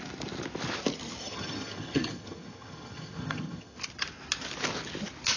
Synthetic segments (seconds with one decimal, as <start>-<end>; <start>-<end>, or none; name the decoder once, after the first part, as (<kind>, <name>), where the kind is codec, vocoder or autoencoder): 1.2-3.8 (vocoder, HiFi-GAN)